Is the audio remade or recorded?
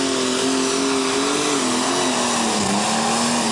recorded